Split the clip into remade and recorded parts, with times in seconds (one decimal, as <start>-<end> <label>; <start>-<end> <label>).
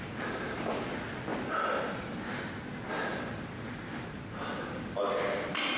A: 0.0-5.8 recorded